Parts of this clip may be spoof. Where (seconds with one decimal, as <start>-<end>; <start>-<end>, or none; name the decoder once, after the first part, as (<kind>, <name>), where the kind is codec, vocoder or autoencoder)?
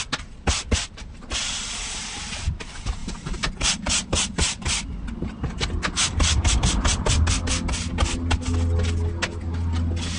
3.0-4.8 (vocoder, BigVGAN v2)